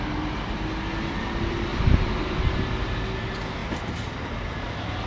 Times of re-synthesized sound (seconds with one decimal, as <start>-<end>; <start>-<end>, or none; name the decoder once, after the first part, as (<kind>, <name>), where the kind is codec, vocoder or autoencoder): none